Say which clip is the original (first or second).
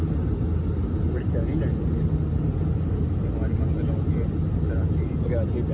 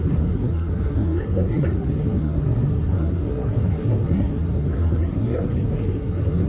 first